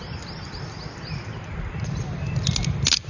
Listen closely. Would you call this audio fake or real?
real